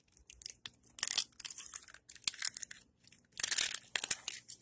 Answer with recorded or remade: recorded